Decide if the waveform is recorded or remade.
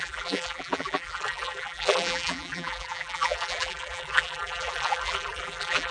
remade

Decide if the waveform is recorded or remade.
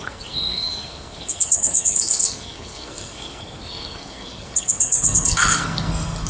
remade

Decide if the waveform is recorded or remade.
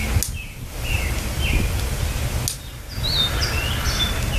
recorded